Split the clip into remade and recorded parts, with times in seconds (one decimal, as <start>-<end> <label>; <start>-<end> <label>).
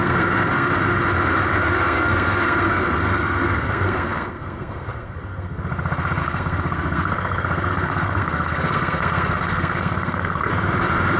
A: 0.0-0.7 remade; 0.7-1.6 recorded; 1.6-5.6 remade; 5.6-6.2 recorded; 6.2-10.5 remade; 10.5-11.2 recorded